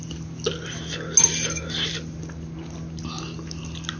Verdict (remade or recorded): recorded